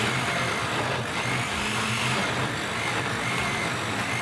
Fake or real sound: real